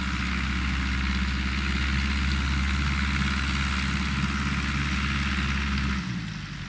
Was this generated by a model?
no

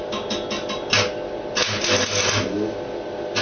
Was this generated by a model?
no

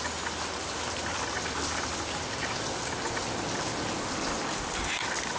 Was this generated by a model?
no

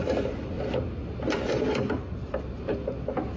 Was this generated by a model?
no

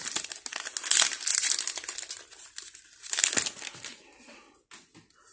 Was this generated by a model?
no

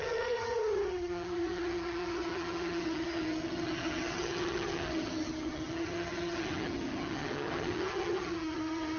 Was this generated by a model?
yes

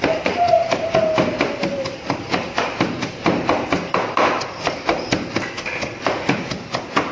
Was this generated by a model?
no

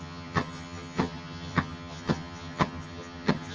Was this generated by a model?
yes